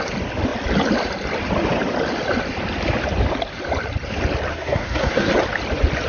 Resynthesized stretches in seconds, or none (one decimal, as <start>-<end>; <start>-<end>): 4.5-5.3